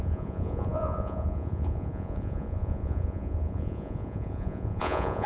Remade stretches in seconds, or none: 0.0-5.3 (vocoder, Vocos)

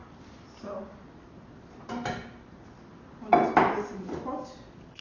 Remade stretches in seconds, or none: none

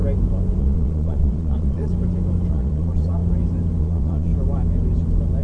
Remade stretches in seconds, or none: 0.6-1.9 (vocoder, Vocos); 2.5-3.2; 3.8-4.3

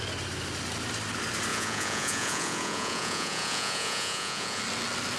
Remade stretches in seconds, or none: 1.5-4.6 (vocoder, Vocos)

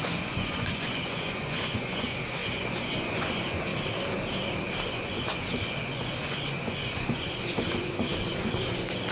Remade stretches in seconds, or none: 0.0-3.7 (vocoder, Vocos); 4.9-9.1

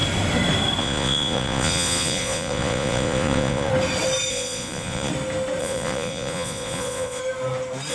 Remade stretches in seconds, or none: 0.8-3.7 (vocoder, Vocos); 4.3-5.1; 5.6-7.2

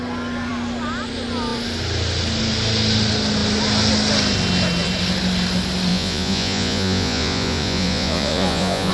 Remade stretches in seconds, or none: 5.9-8.9 (vocoder, Vocos)